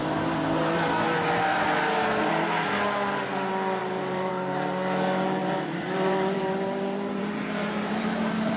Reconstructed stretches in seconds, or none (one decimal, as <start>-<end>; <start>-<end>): 3.8-4.3; 5.4-8.6